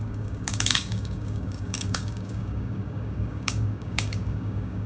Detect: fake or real fake